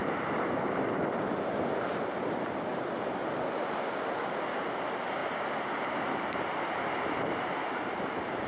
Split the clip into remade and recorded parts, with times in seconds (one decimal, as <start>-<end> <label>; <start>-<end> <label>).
0.0-1.0 remade; 1.0-5.2 recorded; 5.2-7.8 remade; 7.8-8.5 recorded